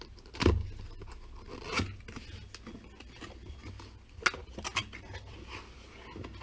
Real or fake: real